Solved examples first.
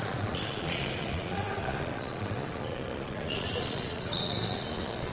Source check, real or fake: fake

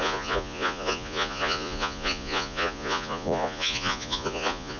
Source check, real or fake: fake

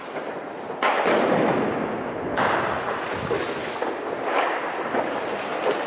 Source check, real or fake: real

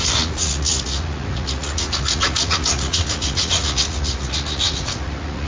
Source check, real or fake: fake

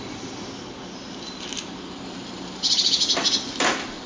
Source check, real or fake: real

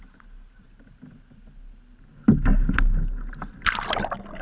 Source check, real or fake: real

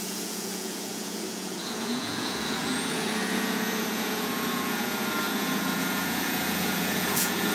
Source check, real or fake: fake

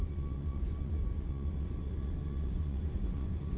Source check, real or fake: fake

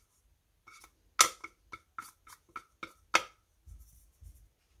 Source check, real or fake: real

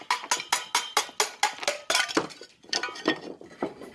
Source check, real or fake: real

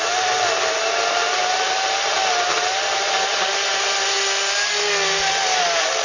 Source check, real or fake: real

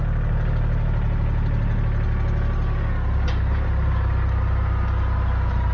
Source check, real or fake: real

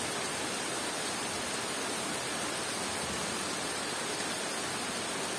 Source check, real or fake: real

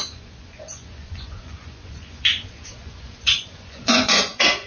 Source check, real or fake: fake